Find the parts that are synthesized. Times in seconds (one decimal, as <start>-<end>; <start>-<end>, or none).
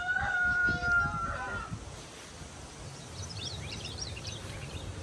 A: 0.0-0.6; 3.0-5.0